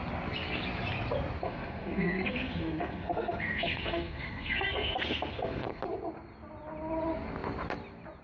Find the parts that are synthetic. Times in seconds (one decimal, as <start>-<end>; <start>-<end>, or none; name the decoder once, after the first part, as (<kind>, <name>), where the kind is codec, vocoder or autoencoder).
1.4-5.8 (codec, SNAC)